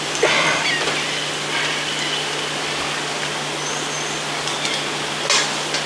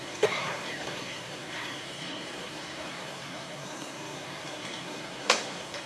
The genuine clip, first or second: first